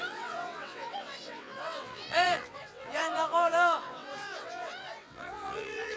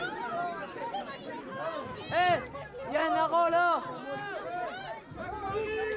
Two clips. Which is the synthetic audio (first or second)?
first